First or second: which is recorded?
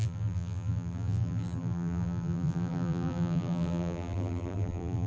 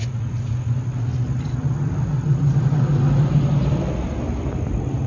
second